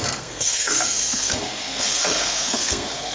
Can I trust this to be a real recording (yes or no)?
no